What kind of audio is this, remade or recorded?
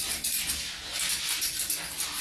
recorded